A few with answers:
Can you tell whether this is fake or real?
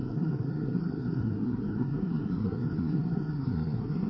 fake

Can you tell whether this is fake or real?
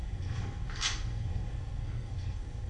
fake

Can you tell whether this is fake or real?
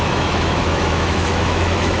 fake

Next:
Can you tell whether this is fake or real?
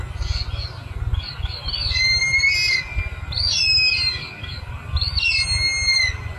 real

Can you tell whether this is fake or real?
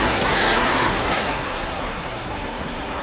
fake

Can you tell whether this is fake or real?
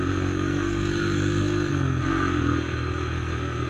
fake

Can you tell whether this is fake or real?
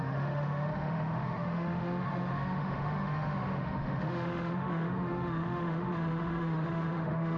fake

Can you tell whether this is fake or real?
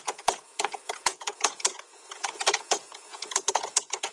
fake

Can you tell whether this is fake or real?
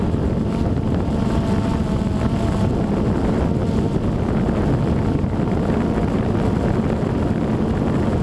real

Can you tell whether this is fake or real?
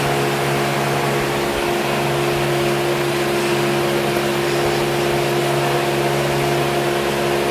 real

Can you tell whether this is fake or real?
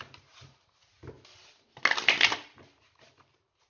real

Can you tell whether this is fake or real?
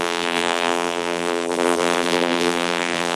fake